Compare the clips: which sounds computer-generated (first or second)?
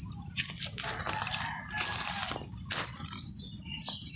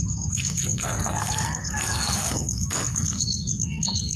second